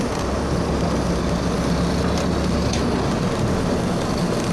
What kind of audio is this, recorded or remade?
recorded